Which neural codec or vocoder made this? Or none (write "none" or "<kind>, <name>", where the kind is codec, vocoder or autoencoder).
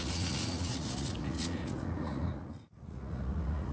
vocoder, Vocos